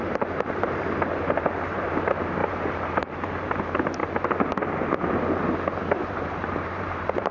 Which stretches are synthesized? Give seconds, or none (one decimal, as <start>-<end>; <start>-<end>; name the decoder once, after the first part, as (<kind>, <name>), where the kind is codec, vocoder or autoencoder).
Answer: 0.0-4.0 (vocoder, BigVGAN v2); 5.9-7.3